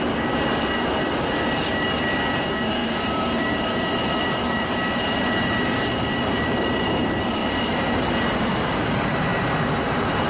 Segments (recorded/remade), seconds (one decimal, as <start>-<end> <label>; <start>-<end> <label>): 0.0-9.3 remade; 9.3-9.9 recorded; 9.9-10.3 remade